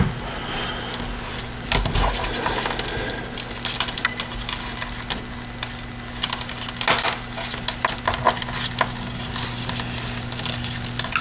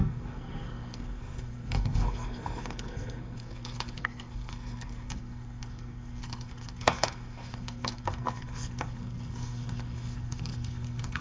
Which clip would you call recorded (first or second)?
first